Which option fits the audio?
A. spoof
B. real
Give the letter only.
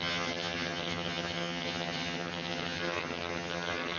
A